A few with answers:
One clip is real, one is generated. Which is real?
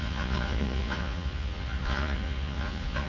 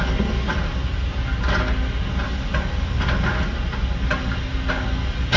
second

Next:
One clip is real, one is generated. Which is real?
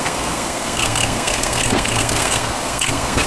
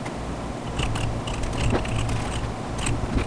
second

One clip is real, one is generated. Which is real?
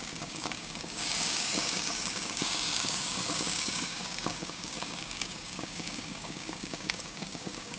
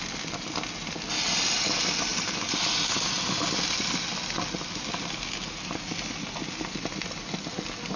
second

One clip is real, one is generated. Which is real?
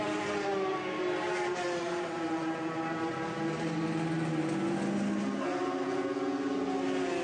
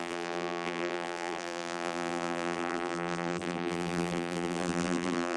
first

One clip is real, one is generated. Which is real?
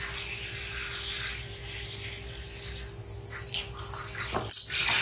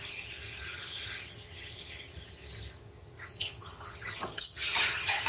first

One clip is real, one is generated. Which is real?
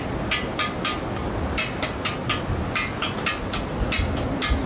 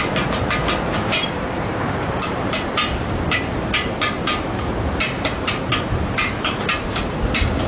first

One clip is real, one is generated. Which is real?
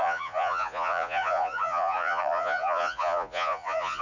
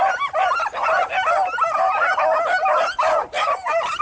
second